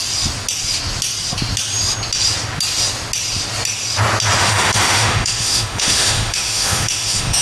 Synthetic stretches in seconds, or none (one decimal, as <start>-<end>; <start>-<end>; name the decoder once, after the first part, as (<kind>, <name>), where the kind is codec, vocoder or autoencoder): 4.4-7.4 (autoencoder, DAC-VAE)